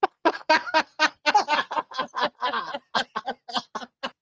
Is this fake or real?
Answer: real